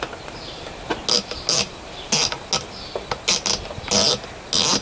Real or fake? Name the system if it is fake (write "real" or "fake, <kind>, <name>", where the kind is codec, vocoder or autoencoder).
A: real